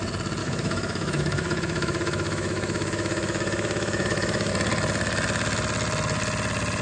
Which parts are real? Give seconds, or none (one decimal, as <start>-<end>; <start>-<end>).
0.0-0.4; 4.5-6.8